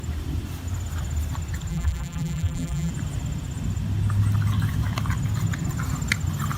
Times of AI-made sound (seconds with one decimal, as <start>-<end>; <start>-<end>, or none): 1.7-2.9